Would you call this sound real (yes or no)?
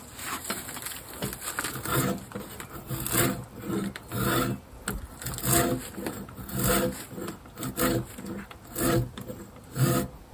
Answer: yes